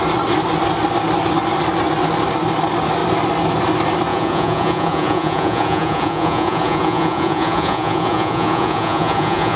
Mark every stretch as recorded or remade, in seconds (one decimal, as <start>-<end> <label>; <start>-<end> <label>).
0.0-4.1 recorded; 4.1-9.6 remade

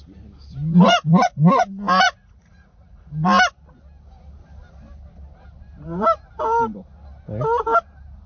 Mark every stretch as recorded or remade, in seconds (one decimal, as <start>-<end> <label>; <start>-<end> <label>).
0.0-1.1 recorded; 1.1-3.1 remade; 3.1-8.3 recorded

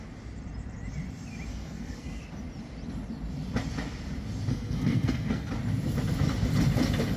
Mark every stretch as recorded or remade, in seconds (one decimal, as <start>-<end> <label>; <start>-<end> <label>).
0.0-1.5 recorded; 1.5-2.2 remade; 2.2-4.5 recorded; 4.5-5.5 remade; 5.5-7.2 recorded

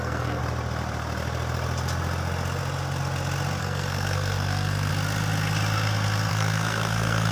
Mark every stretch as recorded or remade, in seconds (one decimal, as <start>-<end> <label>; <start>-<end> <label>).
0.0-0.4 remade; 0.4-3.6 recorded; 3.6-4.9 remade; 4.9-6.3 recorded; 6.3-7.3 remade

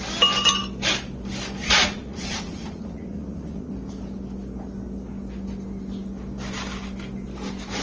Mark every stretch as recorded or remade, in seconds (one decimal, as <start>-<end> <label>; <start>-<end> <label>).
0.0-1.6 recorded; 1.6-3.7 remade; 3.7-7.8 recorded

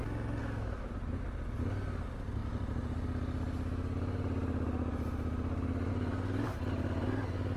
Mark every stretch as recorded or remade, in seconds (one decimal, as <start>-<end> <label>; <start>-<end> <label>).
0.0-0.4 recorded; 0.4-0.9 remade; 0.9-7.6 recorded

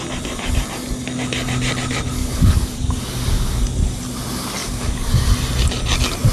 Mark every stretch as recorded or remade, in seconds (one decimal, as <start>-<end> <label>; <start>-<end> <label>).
0.0-2.2 recorded; 2.2-3.6 remade; 3.6-4.6 recorded; 4.6-5.3 remade; 5.3-6.3 recorded